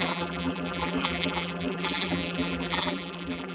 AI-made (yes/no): yes